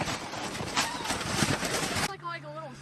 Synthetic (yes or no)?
yes